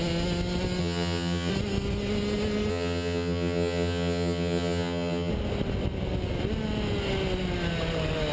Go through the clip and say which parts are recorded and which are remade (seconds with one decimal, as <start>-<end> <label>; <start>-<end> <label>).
0.0-0.8 recorded; 0.8-1.5 remade; 1.5-2.7 recorded; 2.7-5.3 remade; 5.3-8.3 recorded